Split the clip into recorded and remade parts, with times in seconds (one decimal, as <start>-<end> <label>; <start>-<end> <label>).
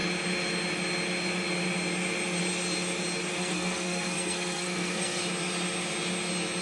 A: 0.0-3.3 recorded; 3.3-5.2 remade; 5.2-6.6 recorded